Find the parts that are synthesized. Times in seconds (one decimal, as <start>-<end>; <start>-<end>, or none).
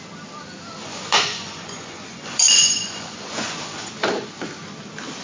0.8-3.9